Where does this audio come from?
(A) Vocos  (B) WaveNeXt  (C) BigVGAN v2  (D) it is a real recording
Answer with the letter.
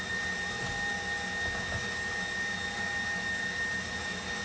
D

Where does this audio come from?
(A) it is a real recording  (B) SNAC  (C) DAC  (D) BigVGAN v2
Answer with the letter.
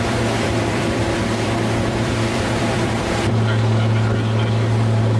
D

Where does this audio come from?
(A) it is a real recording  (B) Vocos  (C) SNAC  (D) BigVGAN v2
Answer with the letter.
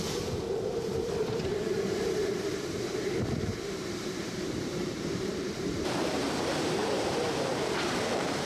D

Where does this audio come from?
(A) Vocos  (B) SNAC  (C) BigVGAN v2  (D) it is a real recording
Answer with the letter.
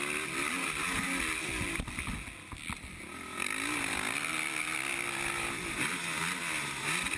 D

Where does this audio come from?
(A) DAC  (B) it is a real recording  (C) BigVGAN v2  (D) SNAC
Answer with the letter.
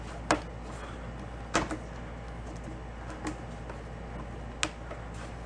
B